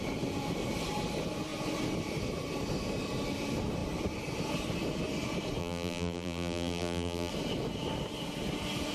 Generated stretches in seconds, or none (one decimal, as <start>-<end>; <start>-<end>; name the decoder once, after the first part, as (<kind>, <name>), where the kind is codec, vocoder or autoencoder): 5.6-7.3 (vocoder, BigVGAN v2)